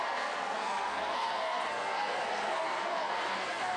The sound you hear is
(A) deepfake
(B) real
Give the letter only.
A